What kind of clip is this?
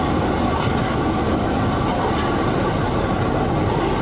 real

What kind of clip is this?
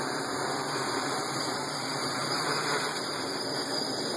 fake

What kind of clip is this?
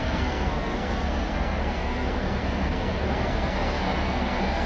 fake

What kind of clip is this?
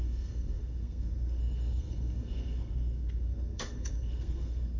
fake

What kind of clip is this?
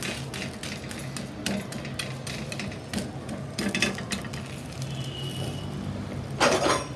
real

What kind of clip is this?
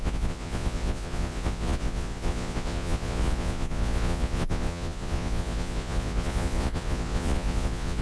fake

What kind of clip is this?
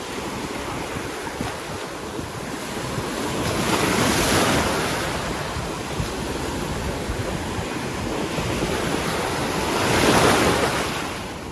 real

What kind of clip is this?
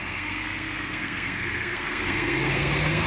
fake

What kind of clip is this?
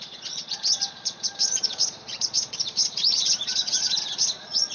fake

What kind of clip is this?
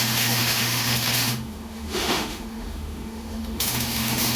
fake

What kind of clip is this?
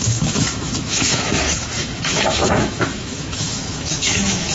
fake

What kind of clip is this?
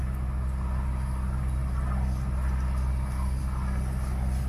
real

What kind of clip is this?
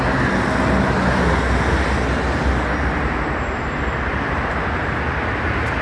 real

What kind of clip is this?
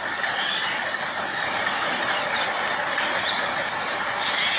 real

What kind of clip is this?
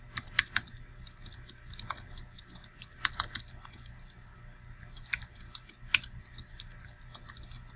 real